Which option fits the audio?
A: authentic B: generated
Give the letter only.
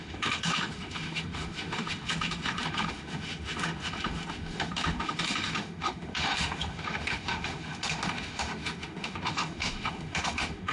B